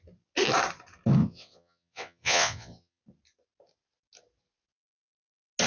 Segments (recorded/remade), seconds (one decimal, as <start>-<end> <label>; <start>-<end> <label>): 0.0-1.2 recorded; 1.2-3.0 remade; 3.0-5.7 recorded